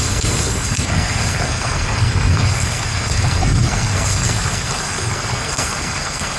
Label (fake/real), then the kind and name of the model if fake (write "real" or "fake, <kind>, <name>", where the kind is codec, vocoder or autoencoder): fake, codec, SNAC